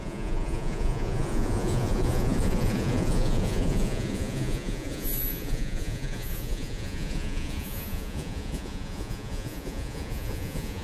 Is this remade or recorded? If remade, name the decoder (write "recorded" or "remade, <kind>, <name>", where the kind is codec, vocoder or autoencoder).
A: remade, vocoder, Vocos